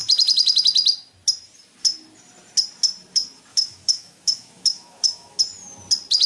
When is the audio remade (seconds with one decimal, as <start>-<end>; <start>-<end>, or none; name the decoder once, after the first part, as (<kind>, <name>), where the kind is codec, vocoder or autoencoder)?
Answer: 3.5-5.4 (autoencoder, DAC-VAE)